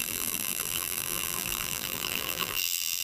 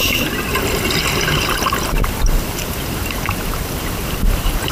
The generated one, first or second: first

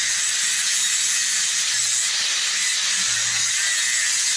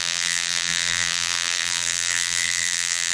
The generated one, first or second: second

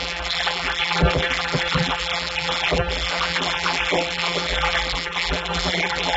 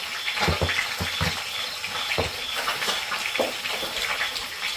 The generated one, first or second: first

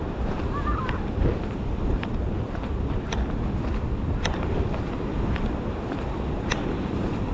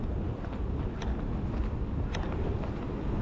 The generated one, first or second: first